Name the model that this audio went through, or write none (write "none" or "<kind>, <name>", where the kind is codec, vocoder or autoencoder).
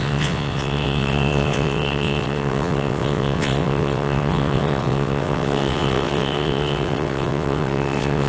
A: vocoder, WaveNeXt